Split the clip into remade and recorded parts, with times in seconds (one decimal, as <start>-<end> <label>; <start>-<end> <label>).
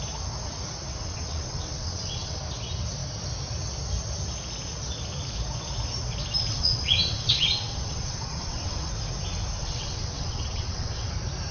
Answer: 0.0-1.0 recorded; 1.0-2.4 remade; 2.4-6.4 recorded; 6.4-8.9 remade; 8.9-9.6 recorded; 9.6-11.1 remade; 11.1-11.5 recorded